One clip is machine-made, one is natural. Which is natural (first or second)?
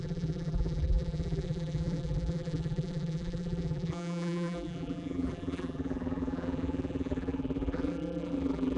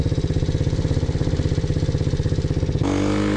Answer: second